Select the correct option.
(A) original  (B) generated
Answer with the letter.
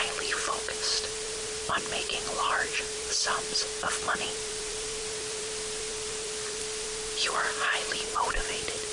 B